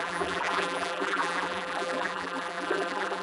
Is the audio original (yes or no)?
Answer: no